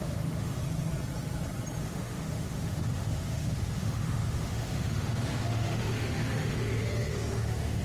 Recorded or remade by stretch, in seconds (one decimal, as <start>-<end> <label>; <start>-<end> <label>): 0.0-0.6 remade; 0.6-1.8 recorded; 1.8-7.8 remade